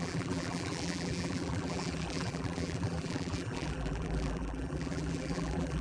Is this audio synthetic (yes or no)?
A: yes